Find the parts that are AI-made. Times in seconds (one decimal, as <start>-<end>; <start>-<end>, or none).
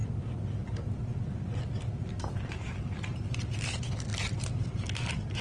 none